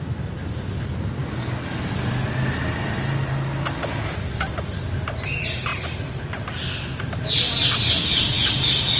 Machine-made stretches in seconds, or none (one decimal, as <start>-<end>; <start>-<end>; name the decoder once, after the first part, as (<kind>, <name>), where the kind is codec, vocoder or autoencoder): none